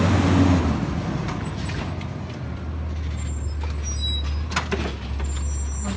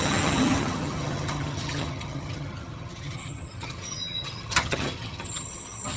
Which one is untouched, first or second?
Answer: first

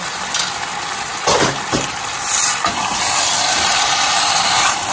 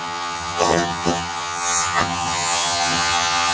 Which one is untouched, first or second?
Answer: first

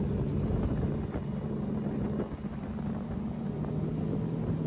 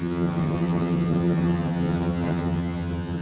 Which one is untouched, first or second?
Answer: first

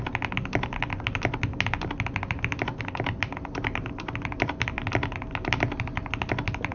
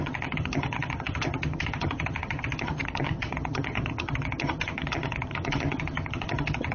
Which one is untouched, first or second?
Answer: first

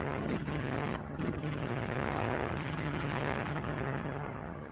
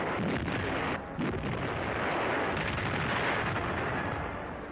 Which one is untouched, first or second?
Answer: second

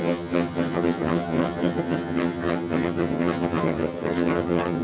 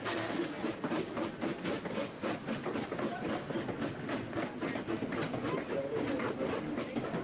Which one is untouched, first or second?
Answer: second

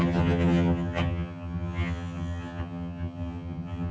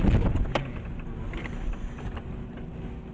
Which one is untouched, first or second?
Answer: second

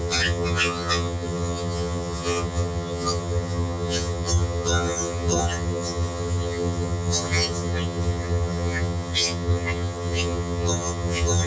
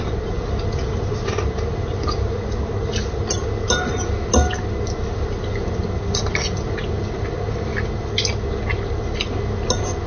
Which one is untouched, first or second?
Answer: second